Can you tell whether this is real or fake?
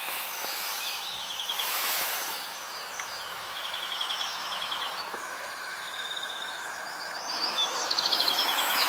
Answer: fake